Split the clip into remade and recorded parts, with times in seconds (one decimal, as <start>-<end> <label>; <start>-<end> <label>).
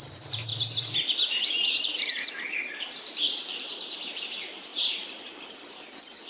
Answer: 0.0-0.5 remade; 0.5-1.1 recorded; 1.1-6.3 remade